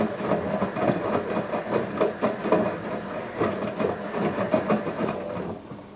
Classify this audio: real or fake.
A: real